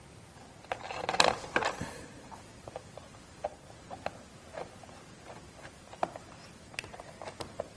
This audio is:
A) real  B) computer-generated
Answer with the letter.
B